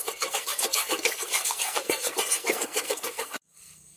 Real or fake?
fake